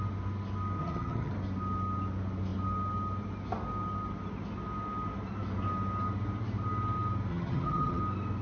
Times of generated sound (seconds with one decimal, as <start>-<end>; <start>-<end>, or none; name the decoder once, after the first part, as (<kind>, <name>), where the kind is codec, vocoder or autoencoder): 0.8-1.3 (vocoder, HiFi-GAN); 7.3-8.0